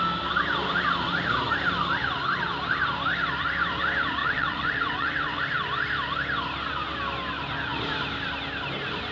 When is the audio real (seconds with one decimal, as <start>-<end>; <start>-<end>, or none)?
0.0-4.2; 5.4-9.1